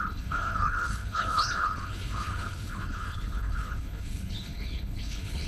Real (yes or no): no